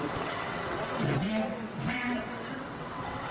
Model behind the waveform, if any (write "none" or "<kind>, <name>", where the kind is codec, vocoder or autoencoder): vocoder, WaveNeXt